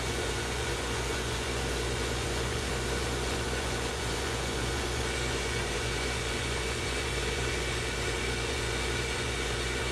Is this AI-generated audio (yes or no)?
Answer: yes